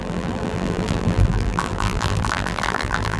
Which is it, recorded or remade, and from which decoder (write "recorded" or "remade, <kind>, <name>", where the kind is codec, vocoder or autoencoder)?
remade, vocoder, BigVGAN v2